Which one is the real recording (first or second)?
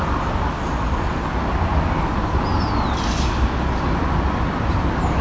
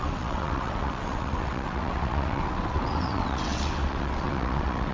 first